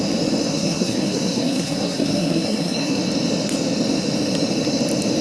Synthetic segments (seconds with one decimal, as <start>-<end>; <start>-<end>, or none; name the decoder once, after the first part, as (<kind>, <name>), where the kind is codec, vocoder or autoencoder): 0.5-3.0 (codec, SNAC)